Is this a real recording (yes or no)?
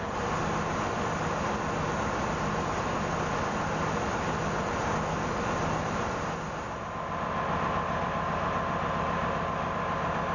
yes